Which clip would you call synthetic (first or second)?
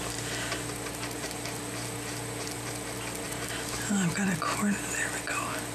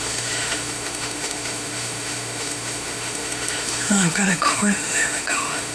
second